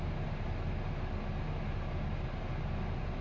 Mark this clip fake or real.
real